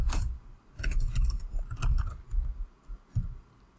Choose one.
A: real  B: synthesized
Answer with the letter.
A